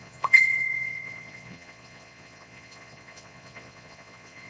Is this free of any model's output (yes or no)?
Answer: no